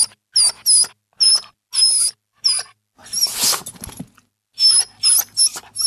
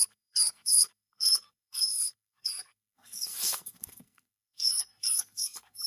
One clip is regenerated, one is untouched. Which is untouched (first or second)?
first